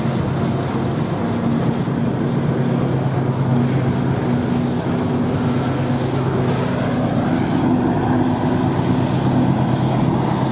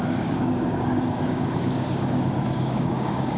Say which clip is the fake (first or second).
second